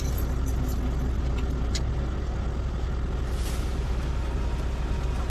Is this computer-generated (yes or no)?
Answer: no